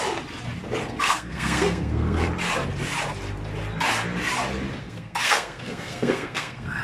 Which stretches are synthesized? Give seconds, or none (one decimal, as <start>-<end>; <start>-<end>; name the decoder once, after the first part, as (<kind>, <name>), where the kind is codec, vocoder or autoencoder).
0.8-2.3 (codec, SNAC); 4.8-6.8